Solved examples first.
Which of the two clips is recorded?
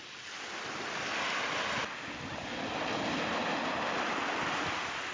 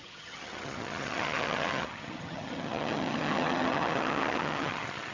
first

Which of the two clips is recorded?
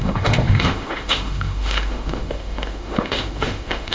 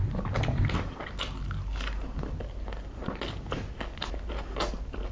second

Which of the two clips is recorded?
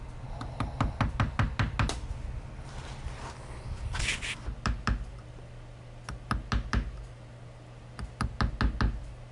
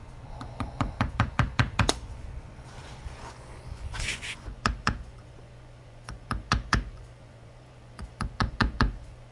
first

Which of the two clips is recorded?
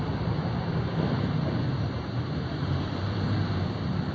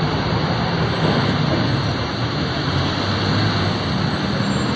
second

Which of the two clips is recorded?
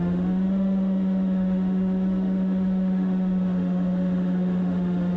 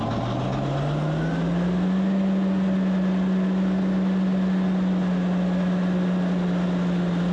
second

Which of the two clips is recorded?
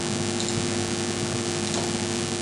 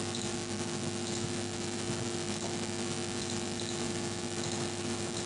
first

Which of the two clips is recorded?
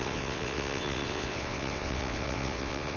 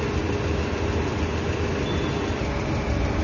second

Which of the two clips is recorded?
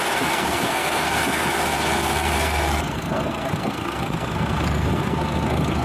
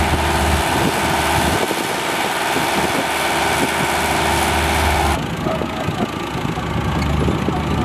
second